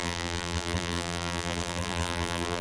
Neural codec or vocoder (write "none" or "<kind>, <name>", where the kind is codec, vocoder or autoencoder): vocoder, BigVGAN v2